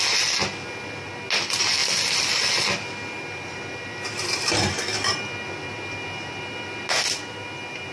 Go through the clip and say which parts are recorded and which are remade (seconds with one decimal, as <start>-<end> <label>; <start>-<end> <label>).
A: 0.0-7.9 recorded